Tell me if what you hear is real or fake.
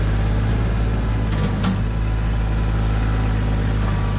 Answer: real